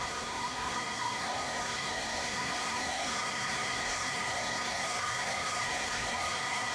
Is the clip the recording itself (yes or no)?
no